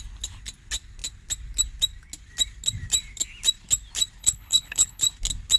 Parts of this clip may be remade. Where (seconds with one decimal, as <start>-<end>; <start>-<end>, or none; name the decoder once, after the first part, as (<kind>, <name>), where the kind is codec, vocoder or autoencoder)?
4.2-5.0 (codec, HILCodec)